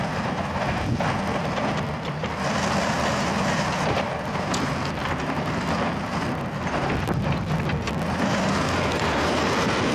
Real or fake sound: real